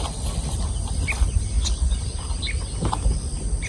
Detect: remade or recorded recorded